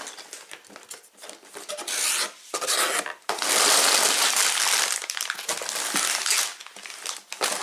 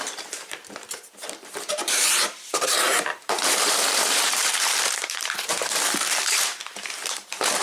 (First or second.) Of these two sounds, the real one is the first